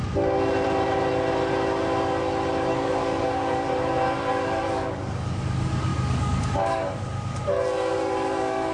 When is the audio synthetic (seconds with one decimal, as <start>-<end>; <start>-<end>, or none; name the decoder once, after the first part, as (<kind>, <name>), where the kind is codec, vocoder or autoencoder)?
2.7-3.7 (codec, DAC); 4.3-8.7